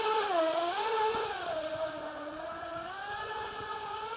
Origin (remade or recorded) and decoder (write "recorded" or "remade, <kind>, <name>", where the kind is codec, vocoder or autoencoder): remade, vocoder, Vocos